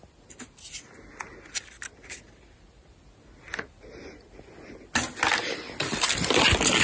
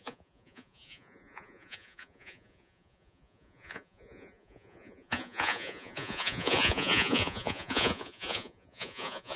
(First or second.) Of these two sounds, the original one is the first